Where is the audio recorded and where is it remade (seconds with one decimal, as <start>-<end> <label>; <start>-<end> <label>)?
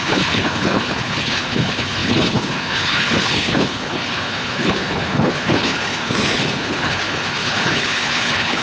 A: 0.0-8.6 remade